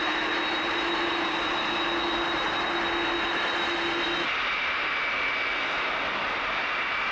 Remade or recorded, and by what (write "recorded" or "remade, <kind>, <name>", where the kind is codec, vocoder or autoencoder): recorded